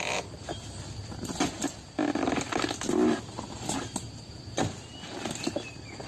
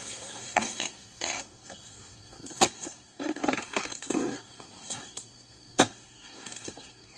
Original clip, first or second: first